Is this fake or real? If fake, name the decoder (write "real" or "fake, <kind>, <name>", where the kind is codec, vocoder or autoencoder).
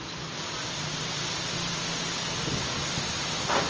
real